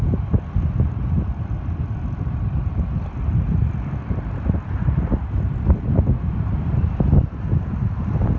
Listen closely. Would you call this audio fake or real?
real